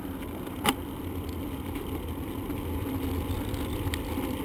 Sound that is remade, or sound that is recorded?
recorded